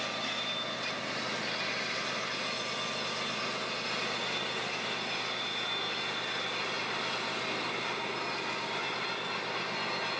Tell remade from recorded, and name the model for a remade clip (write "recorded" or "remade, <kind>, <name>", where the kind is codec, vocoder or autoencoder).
recorded